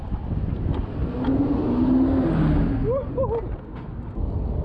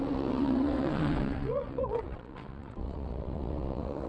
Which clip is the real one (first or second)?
first